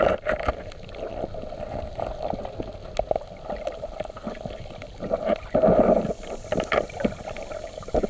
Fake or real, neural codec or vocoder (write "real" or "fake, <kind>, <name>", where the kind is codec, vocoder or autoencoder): real